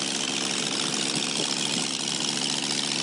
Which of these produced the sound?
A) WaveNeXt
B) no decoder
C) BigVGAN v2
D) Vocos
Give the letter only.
B